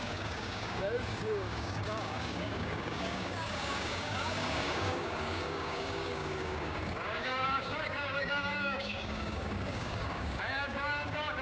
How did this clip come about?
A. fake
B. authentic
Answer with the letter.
A